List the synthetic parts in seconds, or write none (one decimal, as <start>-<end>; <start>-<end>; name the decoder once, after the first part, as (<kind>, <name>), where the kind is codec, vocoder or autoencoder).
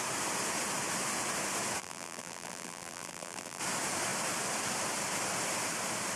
1.8-3.6 (vocoder, BigVGAN v2)